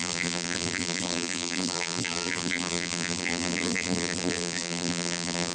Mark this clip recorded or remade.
remade